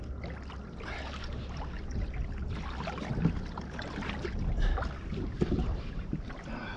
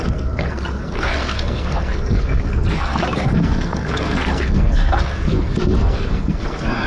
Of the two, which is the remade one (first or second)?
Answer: second